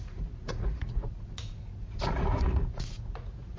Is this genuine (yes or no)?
no